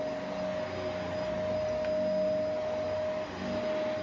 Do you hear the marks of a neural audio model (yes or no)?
no